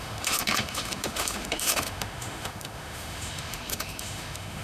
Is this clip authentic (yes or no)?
no